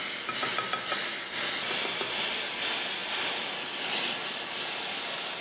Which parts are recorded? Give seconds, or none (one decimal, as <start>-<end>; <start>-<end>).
0.0-5.4